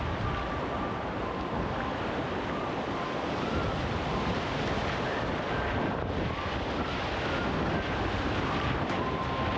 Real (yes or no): yes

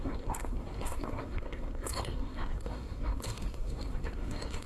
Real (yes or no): no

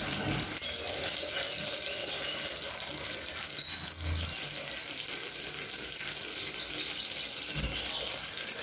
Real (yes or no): yes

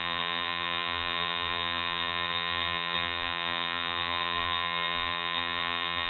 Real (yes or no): no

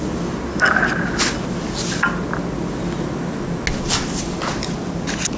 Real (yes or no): yes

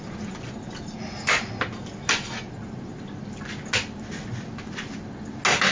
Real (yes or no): yes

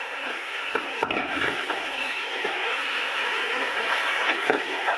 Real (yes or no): no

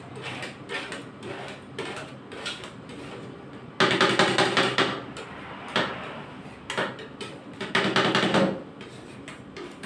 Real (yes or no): yes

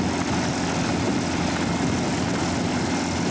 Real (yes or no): yes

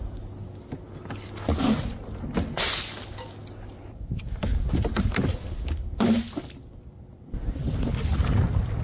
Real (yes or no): yes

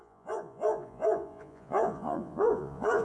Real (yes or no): no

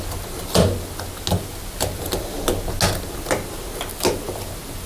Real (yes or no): yes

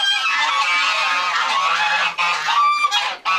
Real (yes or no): yes